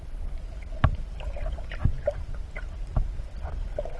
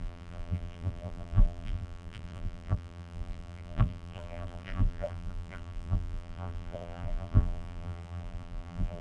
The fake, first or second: second